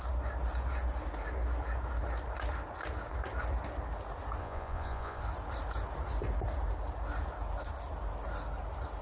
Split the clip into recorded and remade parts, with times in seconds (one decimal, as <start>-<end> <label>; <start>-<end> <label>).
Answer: 0.0-4.4 recorded; 4.4-5.2 remade; 5.2-9.0 recorded